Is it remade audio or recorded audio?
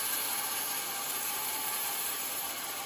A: remade